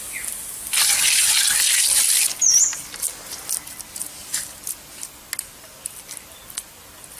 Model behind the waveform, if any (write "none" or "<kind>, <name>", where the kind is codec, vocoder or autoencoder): none